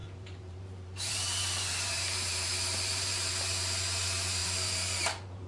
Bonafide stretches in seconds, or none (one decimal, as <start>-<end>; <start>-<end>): 3.3-4.4